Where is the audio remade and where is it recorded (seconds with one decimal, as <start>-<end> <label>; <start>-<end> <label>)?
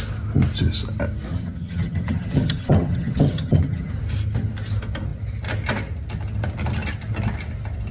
0.0-1.3 recorded; 1.3-3.9 remade; 3.9-7.9 recorded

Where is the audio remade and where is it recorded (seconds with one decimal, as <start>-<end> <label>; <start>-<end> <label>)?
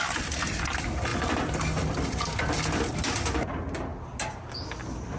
0.0-5.2 recorded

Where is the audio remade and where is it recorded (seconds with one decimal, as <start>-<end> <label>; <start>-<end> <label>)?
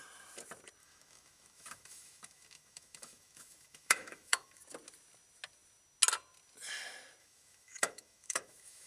0.0-0.8 recorded; 0.8-4.6 remade; 4.6-7.2 recorded; 7.2-8.9 remade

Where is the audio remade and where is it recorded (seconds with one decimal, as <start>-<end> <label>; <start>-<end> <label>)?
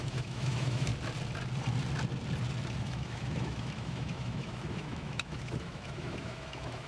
0.0-0.9 remade; 0.9-2.8 recorded; 2.8-6.9 remade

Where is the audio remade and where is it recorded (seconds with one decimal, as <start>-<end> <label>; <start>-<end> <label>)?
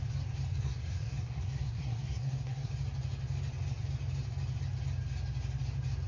0.0-0.5 recorded; 0.5-2.7 remade; 2.7-6.1 recorded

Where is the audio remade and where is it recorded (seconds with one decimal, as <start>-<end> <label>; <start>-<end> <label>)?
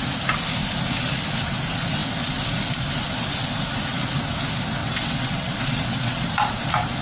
0.0-4.8 recorded; 4.8-6.2 remade; 6.2-7.0 recorded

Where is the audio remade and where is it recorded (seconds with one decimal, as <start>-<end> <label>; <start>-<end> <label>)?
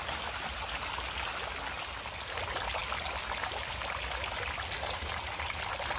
0.0-6.0 recorded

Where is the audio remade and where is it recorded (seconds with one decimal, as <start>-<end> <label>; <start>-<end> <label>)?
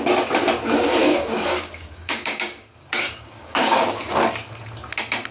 0.0-1.0 recorded; 1.0-4.2 remade; 4.2-5.3 recorded